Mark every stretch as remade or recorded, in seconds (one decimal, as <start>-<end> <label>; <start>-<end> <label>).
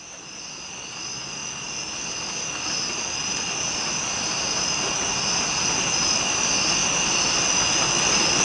0.0-8.4 recorded